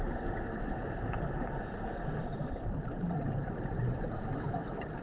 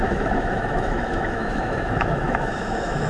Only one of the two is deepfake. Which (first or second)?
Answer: second